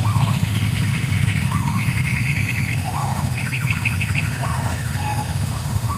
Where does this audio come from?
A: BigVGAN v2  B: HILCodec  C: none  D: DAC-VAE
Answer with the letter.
D